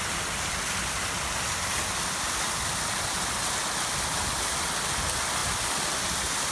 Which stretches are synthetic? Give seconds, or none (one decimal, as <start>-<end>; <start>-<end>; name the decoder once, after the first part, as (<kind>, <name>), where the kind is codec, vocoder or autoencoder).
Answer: none